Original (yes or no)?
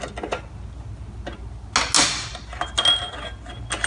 yes